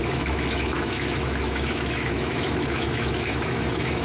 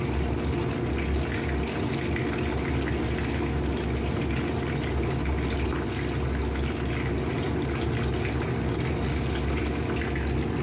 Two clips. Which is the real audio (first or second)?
second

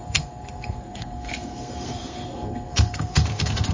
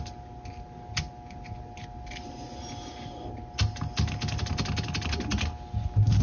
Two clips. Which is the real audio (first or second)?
second